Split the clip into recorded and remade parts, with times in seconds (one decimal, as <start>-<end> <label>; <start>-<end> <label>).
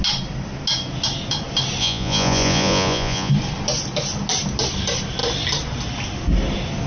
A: 0.0-1.8 recorded; 1.8-3.3 remade; 3.3-6.9 recorded